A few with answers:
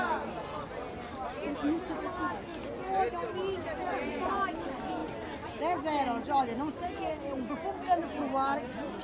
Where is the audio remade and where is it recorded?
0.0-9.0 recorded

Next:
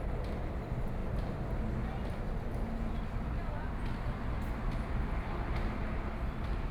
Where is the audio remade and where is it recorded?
0.0-6.7 recorded

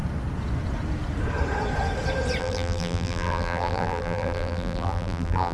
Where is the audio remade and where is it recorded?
0.0-2.4 recorded; 2.4-5.5 remade